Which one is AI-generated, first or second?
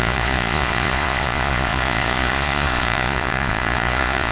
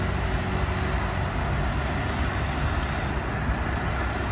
first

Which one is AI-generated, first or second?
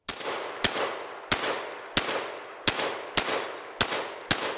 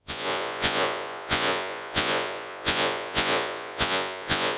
second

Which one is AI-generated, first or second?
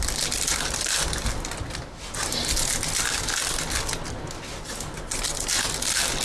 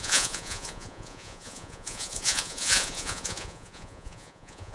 second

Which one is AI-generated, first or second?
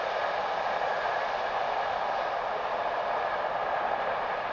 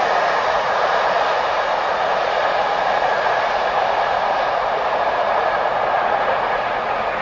second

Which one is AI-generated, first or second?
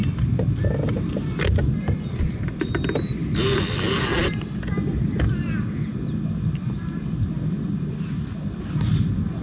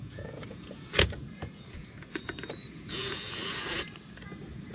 second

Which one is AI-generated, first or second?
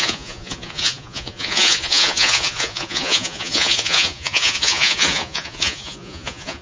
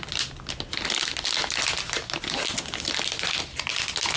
first